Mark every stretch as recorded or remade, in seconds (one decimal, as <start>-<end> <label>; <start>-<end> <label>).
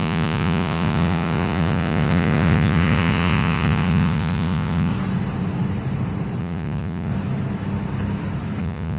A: 0.0-4.9 remade; 4.9-6.4 recorded; 6.4-7.1 remade; 7.1-8.6 recorded; 8.6-9.0 remade